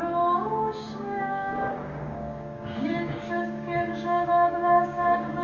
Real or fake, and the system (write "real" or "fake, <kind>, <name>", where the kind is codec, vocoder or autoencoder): fake, codec, DAC